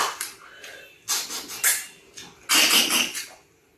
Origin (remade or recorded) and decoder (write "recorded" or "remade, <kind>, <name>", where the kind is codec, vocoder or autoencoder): recorded